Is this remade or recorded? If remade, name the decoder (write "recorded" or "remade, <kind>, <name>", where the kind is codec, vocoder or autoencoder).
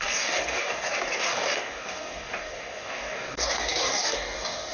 remade, codec, DAC